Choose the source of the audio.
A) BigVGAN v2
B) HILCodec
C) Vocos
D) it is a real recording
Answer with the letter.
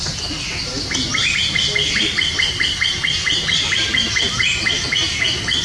D